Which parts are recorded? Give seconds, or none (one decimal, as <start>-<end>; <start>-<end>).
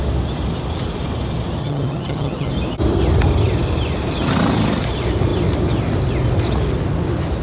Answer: 0.0-1.6; 2.5-7.4